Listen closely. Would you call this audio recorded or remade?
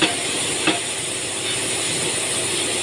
recorded